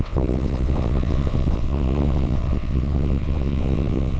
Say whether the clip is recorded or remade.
remade